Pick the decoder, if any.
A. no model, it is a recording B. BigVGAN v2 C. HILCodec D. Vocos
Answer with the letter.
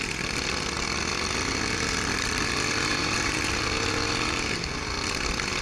A